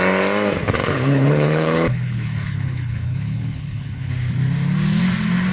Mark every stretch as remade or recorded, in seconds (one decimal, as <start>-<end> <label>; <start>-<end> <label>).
0.0-0.8 recorded; 0.8-4.1 remade; 4.1-5.5 recorded